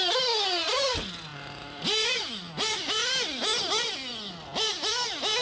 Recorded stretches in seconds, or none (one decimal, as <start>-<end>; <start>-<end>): 0.0-5.4